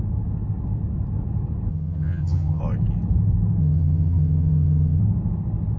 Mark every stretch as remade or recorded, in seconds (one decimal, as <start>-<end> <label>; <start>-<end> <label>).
0.0-1.7 recorded; 1.7-2.6 remade; 2.6-3.6 recorded; 3.6-5.0 remade; 5.0-5.8 recorded